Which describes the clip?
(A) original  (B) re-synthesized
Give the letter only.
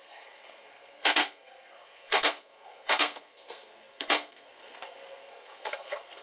B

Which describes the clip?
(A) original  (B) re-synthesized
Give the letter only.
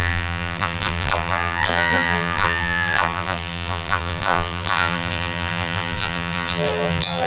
B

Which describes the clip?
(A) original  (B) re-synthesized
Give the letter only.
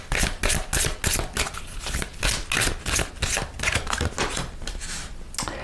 A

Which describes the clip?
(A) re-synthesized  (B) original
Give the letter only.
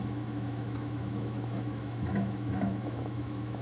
A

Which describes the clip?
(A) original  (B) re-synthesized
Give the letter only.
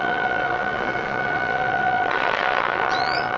B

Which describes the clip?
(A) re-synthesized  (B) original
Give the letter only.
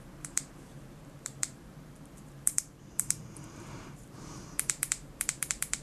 A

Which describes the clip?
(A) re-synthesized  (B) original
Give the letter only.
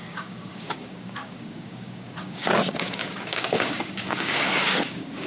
A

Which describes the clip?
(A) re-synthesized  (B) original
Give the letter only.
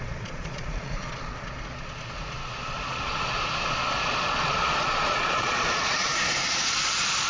A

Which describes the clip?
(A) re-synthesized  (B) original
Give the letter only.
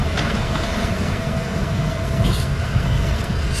A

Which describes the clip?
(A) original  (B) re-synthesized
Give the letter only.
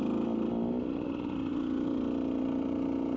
A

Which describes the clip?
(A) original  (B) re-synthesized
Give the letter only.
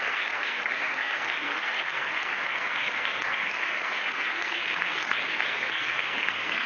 B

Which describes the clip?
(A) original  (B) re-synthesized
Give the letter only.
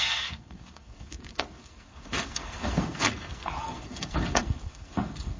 B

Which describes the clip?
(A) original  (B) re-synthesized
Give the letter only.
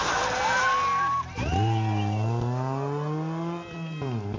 A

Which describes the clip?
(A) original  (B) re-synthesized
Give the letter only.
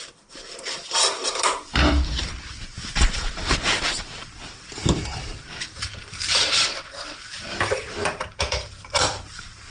B